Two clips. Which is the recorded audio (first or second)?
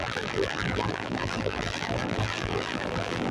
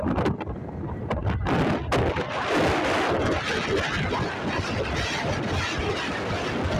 second